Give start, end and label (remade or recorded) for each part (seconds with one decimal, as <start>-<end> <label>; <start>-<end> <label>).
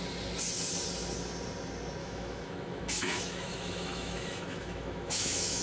0.0-2.0 recorded; 2.0-5.6 remade